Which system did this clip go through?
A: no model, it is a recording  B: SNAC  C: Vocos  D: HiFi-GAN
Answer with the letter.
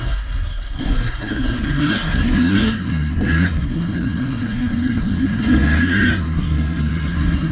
B